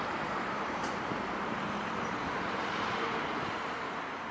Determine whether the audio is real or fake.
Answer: fake